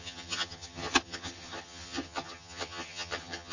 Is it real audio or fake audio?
fake